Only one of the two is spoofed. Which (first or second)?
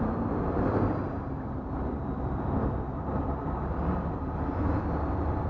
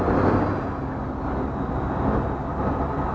first